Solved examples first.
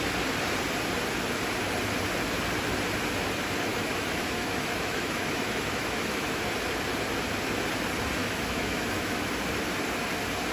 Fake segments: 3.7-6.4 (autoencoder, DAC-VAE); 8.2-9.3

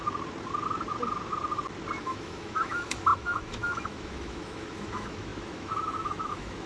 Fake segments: 2.0-6.7 (autoencoder, DAC-VAE)

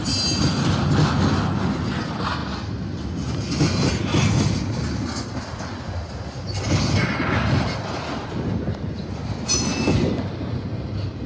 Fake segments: none

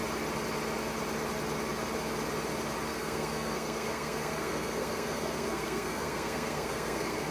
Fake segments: 2.9-7.3 (codec, SNAC)

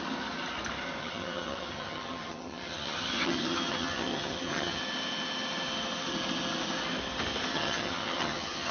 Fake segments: 1.0-4.8 (vocoder, HiFi-GAN); 7.5-8.7

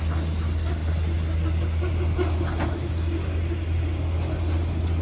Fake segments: none

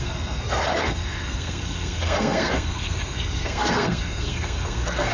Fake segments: 0.0-5.1 (codec, SNAC)